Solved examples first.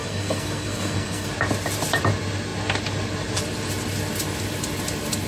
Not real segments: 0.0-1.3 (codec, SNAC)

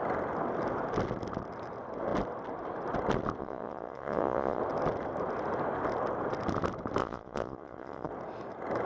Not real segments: 3.4-4.6 (vocoder, Vocos); 7.0-8.1

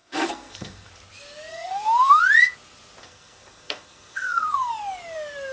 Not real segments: 0.0-0.9 (codec, SNAC); 1.5-2.2; 3.0-4.7

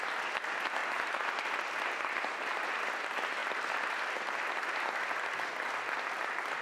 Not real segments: 3.4-4.9 (vocoder, BigVGAN v2)

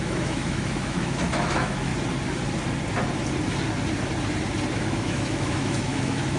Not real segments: 0.0-1.9 (autoencoder, DAC-VAE); 4.7-6.4

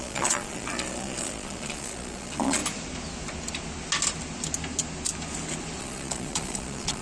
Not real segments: 0.0-2.6 (vocoder, Vocos); 5.8-7.0